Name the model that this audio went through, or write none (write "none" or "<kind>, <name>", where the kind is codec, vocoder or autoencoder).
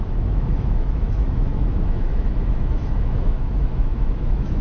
autoencoder, DAC-VAE